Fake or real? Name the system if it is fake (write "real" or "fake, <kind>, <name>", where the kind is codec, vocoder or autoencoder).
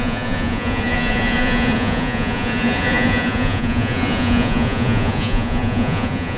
fake, vocoder, Vocos